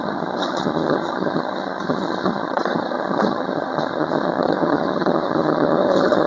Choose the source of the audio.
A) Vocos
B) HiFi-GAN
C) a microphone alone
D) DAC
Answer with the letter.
B